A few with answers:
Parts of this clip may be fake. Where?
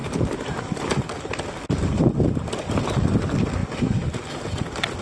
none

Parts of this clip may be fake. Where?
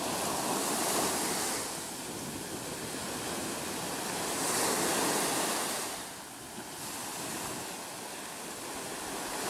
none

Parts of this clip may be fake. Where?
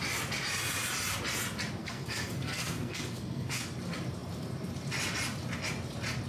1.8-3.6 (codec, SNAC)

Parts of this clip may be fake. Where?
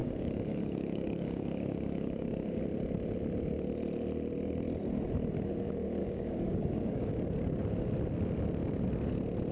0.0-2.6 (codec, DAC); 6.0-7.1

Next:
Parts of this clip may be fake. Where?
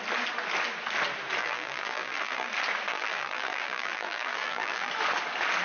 1.4-2.5 (vocoder, BigVGAN v2); 2.9-4.9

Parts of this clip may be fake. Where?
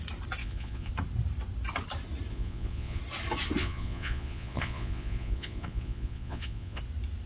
0.4-0.9 (vocoder, Vocos); 2.3-3.0; 3.6-6.8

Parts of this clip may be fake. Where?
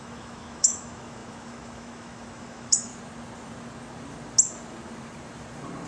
0.0-2.9 (autoencoder, DAC-VAE)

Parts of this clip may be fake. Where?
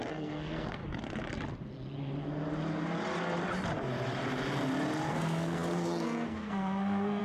0.0-0.8 (codec, SNAC); 5.1-7.2